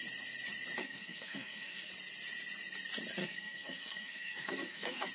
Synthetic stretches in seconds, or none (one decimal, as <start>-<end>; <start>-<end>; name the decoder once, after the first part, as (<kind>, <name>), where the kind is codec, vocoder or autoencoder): 0.8-1.9 (codec, SNAC); 3.2-5.1